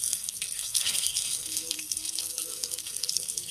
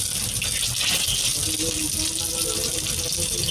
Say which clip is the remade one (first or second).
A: first